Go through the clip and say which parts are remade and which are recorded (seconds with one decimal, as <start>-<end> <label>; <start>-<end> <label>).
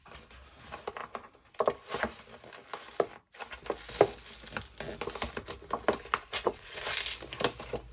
0.0-6.3 recorded; 6.3-6.9 remade; 6.9-7.9 recorded